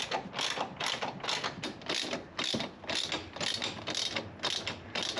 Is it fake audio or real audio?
real